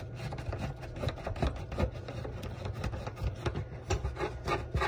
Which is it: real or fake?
real